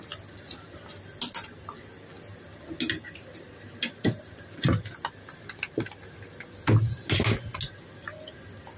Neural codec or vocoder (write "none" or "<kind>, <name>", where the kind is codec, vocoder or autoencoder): none